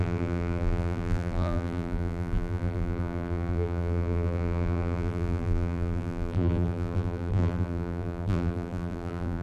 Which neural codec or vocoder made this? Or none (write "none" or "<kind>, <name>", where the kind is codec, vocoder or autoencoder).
vocoder, BigVGAN v2